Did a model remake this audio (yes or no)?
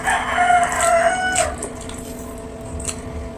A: no